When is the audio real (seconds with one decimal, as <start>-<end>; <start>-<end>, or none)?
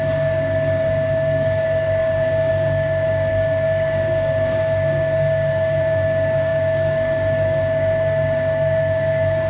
none